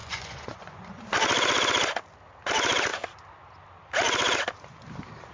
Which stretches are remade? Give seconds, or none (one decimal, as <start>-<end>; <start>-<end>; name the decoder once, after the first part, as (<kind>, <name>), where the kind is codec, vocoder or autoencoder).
0.0-1.0 (vocoder, Vocos)